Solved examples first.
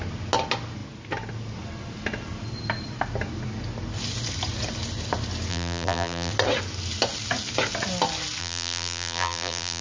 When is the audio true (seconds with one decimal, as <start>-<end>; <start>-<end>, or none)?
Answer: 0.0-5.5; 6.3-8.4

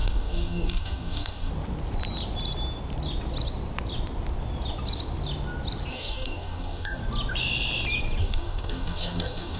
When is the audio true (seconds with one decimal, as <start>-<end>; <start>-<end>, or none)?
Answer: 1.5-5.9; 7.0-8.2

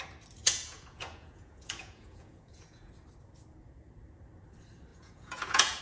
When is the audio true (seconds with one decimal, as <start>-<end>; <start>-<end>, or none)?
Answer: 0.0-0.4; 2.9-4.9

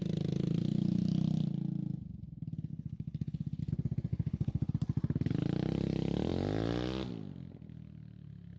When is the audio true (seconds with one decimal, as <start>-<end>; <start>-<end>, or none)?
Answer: 0.0-2.7; 3.6-4.1; 4.7-8.6

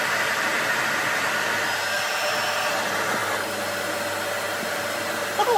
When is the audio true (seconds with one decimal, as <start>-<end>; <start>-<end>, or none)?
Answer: 0.0-5.6

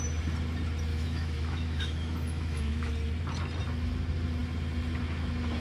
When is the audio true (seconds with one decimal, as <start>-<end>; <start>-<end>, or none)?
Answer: 0.0-0.9; 2.9-5.6